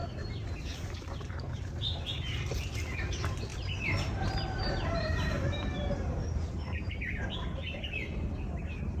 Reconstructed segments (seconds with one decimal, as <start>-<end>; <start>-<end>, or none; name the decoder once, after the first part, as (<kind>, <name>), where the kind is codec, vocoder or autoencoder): 0.0-1.6 (vocoder, BigVGAN v2); 3.5-7.8